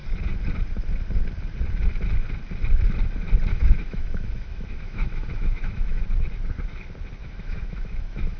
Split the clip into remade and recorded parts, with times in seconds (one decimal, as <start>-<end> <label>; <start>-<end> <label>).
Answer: 0.0-3.5 recorded; 3.5-6.0 remade; 6.0-7.2 recorded; 7.2-8.4 remade